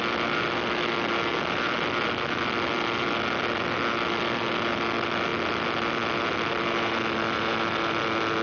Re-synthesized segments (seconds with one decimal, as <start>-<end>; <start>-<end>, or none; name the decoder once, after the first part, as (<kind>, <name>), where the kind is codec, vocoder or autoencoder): none